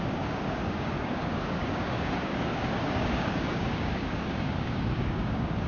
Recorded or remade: remade